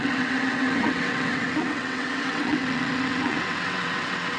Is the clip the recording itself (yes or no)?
no